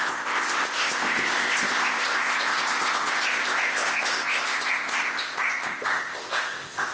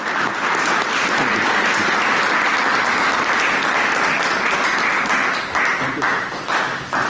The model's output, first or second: first